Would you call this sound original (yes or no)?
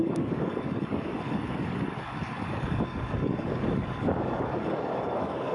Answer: no